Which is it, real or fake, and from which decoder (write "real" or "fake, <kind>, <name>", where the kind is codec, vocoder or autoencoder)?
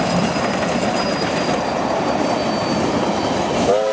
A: real